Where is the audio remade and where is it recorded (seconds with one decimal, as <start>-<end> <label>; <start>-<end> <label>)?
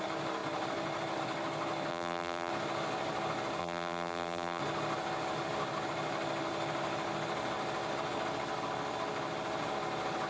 0.0-1.9 recorded; 1.9-2.5 remade; 2.5-3.6 recorded; 3.6-4.6 remade; 4.6-10.3 recorded